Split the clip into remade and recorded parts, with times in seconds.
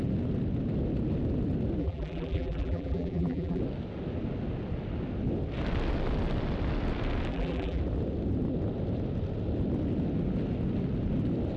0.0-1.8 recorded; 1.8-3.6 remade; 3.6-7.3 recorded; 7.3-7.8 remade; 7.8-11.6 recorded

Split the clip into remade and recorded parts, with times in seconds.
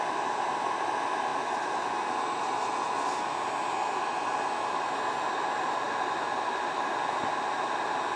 0.0-8.2 recorded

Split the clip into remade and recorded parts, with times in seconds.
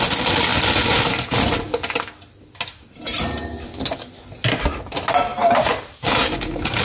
0.0-5.3 recorded; 5.3-6.8 remade